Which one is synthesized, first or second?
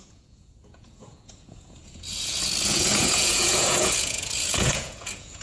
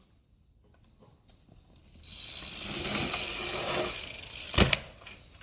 first